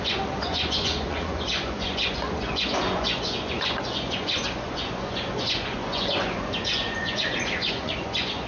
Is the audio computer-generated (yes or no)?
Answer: yes